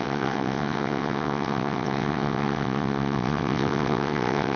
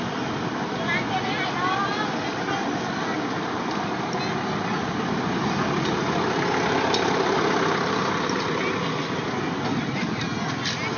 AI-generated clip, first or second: first